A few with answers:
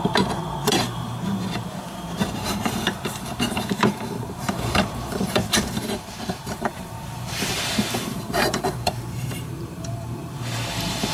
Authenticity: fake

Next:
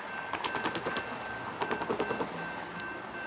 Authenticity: real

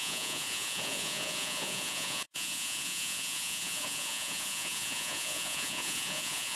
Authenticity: fake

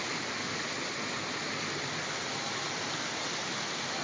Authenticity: real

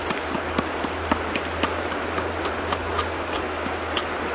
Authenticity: real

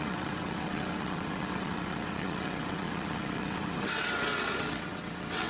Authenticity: fake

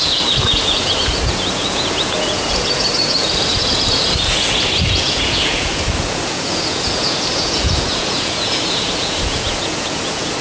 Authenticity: fake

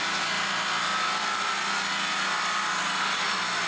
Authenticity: real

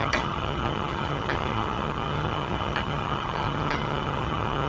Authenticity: fake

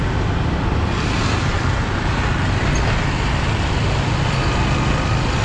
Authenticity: real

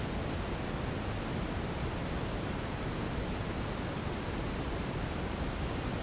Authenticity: real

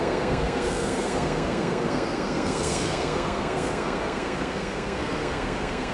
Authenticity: fake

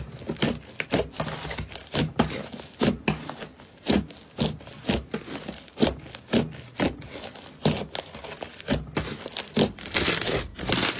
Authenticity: real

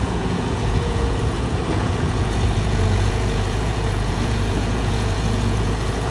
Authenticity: fake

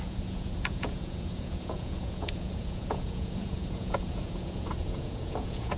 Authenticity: fake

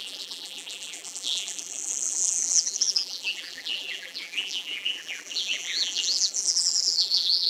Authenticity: fake